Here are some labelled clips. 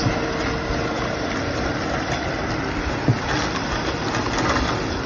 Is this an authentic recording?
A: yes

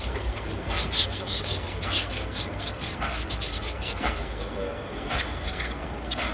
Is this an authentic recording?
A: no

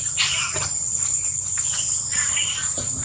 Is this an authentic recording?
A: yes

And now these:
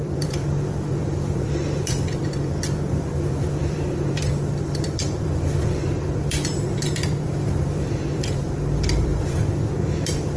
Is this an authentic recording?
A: no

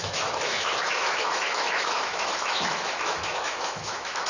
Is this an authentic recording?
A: no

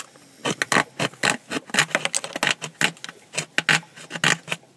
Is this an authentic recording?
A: yes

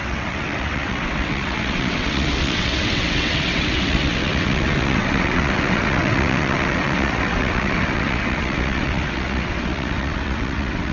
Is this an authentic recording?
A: no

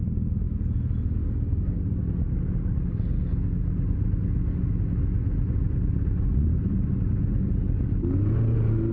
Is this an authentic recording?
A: yes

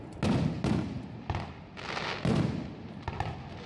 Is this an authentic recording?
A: yes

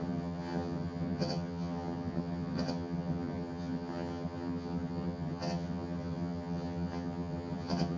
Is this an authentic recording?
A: no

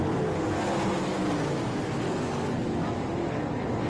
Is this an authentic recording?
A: yes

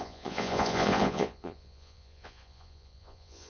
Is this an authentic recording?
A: no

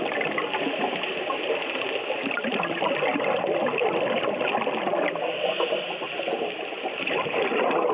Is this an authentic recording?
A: yes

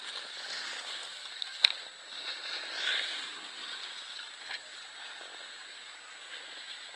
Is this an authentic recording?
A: yes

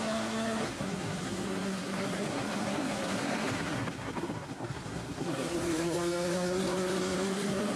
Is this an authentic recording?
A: no